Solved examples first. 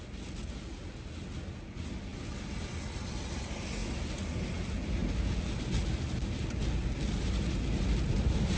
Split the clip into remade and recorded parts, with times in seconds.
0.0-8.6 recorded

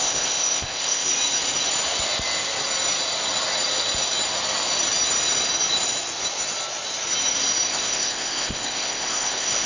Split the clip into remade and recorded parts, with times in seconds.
0.0-1.1 remade; 1.1-7.7 recorded; 7.7-9.7 remade